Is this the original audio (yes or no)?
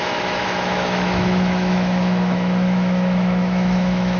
no